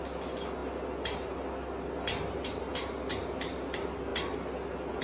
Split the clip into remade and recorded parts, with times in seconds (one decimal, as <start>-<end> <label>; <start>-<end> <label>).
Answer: 0.0-0.6 remade; 0.6-1.5 recorded; 1.5-5.0 remade